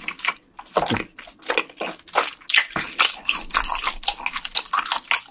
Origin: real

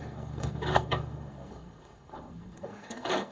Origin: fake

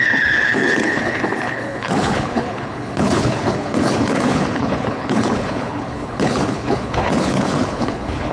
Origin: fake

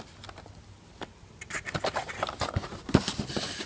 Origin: real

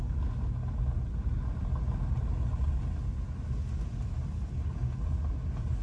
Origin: real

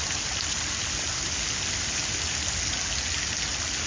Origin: real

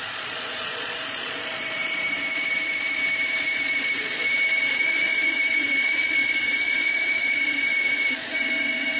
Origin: fake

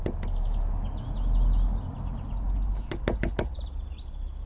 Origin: real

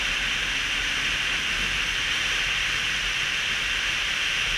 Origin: real